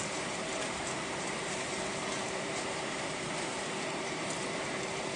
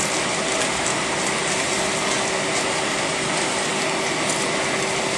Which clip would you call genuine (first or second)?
second